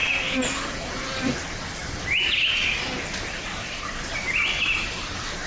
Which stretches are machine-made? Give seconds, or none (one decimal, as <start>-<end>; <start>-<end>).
none